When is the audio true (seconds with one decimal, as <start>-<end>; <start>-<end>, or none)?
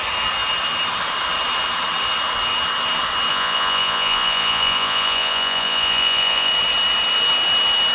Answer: 0.0-3.3; 6.5-7.9